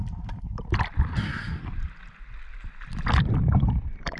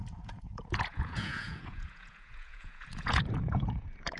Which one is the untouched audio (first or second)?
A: first